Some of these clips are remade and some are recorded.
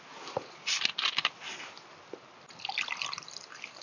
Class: recorded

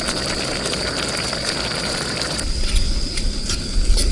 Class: recorded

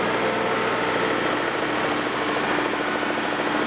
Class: recorded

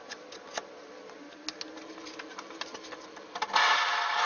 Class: recorded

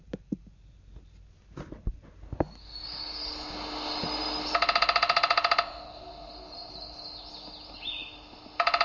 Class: recorded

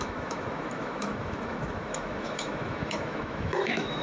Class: remade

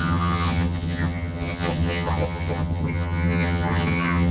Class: remade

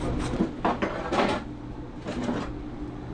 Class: recorded